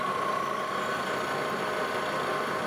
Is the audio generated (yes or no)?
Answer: no